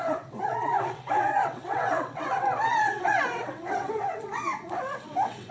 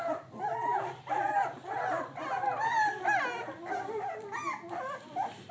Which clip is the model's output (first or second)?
first